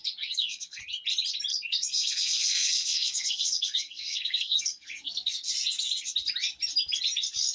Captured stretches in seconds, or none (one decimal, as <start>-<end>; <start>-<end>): 0.8-1.5; 5.5-7.5